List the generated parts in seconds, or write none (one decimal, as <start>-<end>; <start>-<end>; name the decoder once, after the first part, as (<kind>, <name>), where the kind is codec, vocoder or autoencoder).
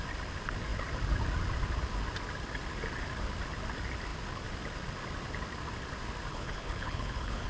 6.3-7.5 (codec, HILCodec)